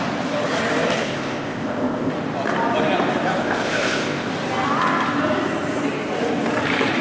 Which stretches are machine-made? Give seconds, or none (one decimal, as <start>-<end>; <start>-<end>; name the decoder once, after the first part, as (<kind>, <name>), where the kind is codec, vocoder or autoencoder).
1.0-2.1 (codec, ZipCodec); 3.4-4.3